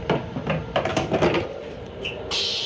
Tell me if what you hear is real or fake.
fake